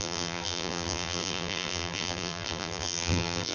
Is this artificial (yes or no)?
yes